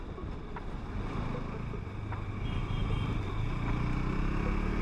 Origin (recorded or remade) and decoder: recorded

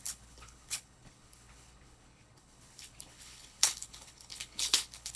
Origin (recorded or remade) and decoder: remade, codec, HILCodec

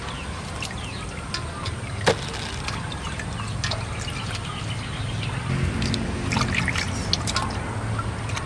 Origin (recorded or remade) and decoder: recorded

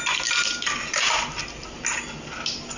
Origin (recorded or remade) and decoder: recorded